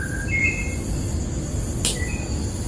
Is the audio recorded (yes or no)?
yes